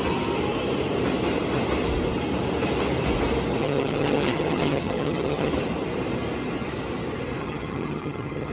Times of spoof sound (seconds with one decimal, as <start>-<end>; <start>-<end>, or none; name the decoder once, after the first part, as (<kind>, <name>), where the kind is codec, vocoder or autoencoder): 3.6-5.5 (vocoder, HiFi-GAN); 7.4-8.5